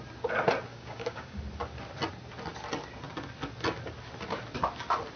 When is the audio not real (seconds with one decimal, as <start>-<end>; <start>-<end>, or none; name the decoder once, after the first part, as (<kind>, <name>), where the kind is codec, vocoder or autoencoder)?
0.7-1.4 (codec, DAC)